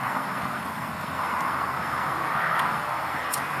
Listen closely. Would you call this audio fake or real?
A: fake